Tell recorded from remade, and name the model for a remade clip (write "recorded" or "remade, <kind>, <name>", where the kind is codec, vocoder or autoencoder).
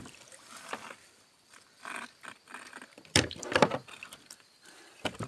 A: remade, vocoder, BigVGAN v2